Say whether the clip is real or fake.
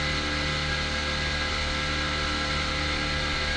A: real